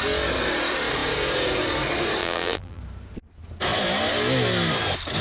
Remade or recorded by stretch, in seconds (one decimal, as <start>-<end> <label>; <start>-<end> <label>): 0.0-2.2 recorded; 2.2-2.8 remade; 2.8-5.2 recorded